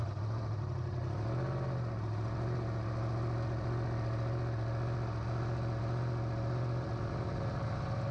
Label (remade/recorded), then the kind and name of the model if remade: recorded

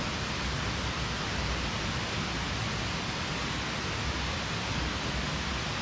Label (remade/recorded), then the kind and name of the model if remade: recorded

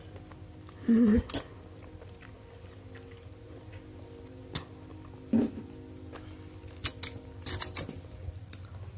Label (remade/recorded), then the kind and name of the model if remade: recorded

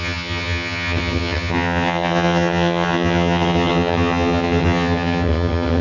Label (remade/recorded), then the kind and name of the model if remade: remade, vocoder, HiFi-GAN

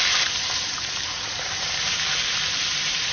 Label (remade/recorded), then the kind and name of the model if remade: remade, vocoder, BigVGAN v2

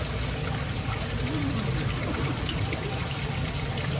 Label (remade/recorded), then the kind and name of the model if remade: recorded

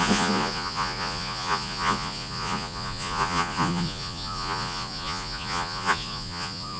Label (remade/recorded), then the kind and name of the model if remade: remade, vocoder, Vocos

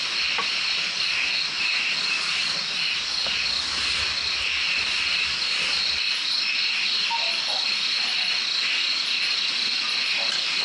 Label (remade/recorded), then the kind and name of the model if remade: recorded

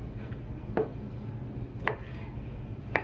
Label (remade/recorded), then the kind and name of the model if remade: remade, codec, SNAC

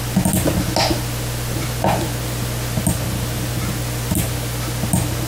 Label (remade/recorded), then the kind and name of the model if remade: recorded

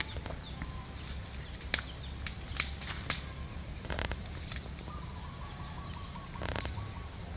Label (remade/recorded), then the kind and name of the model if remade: recorded